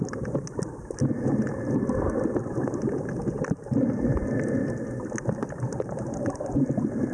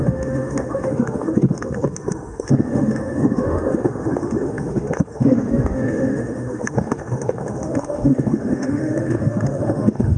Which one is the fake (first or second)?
second